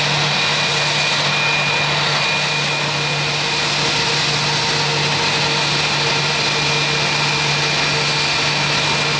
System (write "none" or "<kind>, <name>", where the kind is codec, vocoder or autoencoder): none